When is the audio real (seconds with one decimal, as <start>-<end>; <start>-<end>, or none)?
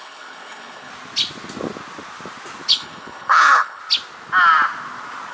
0.9-2.7; 3.8-5.3